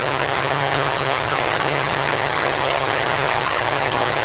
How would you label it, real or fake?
fake